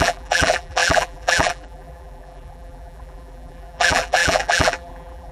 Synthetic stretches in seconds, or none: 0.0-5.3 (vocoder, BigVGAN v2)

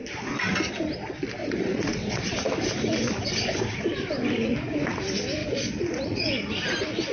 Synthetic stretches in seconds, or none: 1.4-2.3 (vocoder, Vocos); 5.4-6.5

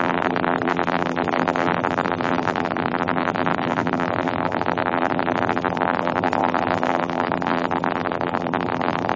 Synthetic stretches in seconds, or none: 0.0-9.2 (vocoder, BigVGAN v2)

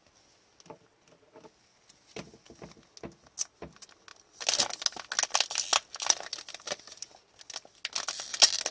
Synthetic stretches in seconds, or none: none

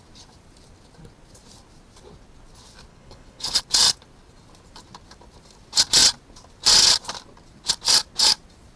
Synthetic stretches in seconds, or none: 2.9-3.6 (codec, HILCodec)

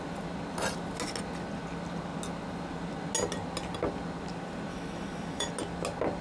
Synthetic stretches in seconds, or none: 4.7-5.5 (autoencoder, DAC-VAE)